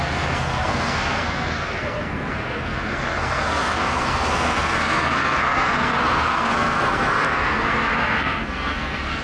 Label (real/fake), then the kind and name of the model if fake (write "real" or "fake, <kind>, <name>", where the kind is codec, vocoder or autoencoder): fake, codec, SNAC